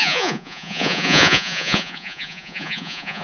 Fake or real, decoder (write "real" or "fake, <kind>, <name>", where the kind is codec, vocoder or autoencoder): fake, vocoder, Vocos